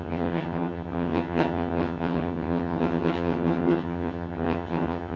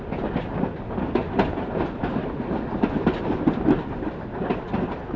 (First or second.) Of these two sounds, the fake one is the first